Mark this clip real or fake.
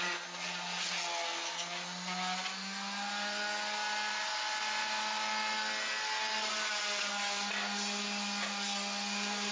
real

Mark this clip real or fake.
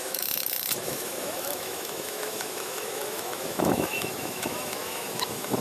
fake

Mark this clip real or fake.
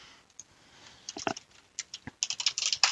real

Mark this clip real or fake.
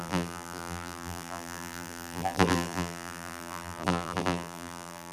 fake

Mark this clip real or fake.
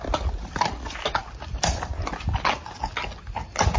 real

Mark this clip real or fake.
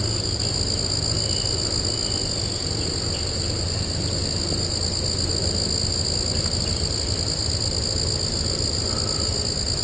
real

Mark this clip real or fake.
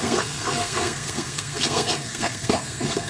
fake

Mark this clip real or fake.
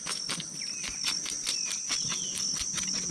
real